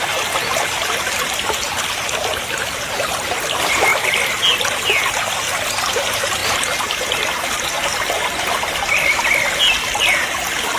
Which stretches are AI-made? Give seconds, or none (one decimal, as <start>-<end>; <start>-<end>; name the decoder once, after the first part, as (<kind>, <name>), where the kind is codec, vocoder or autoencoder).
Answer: 6.4-6.9 (vocoder, BigVGAN v2)